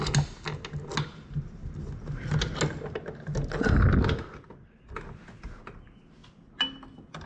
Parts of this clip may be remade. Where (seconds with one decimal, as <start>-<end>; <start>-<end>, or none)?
none